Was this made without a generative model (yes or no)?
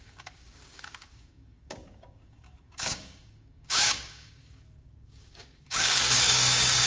no